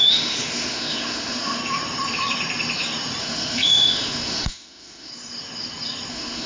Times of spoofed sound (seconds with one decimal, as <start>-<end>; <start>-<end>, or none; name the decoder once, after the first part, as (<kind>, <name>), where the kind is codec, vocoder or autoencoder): 0.0-1.6 (autoencoder, DAC-VAE); 3.2-5.1; 6.1-6.5